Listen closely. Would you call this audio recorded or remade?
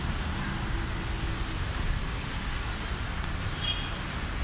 recorded